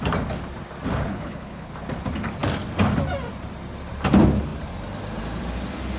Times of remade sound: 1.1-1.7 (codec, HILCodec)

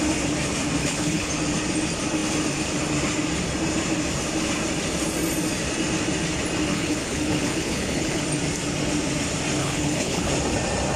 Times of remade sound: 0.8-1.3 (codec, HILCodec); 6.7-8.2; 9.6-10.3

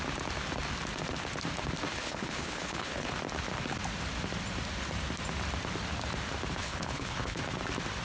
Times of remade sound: 1.9-3.1 (codec, HILCodec); 6.6-7.4

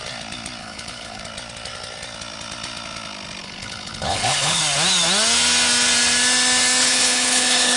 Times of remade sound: 0.6-1.2 (codec, HILCodec); 3.4-4.6; 6.8-7.8

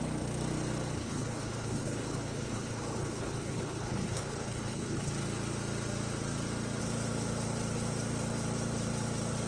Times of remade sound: 1.0-5.1 (codec, HILCodec)

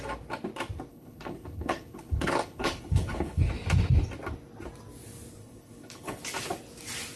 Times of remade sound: 0.9-3.5 (codec, HILCodec); 5.4-6.2

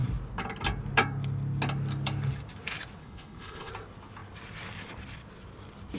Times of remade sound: 3.0-3.7 (codec, HILCodec)